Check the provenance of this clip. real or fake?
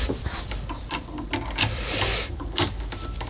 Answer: real